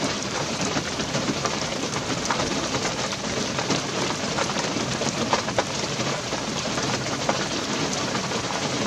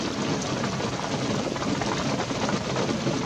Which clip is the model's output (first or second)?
first